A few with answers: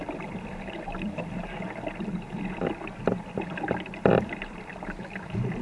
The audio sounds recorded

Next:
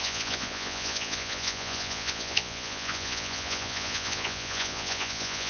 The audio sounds remade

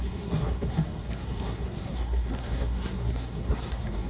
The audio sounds remade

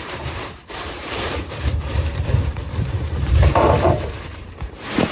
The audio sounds remade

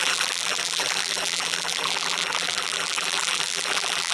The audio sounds remade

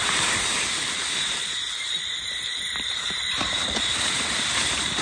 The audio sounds remade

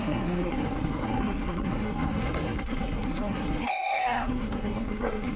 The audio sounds remade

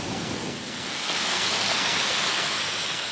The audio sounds remade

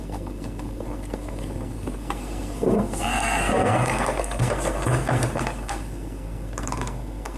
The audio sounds remade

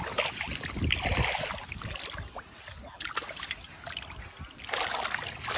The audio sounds recorded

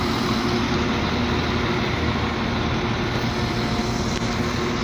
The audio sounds recorded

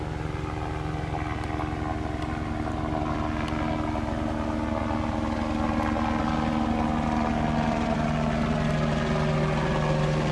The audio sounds recorded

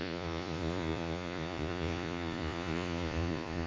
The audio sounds remade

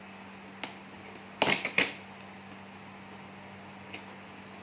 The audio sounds recorded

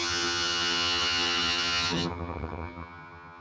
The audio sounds remade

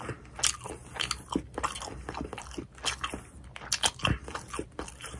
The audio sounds recorded